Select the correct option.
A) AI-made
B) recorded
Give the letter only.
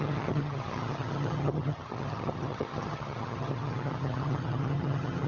A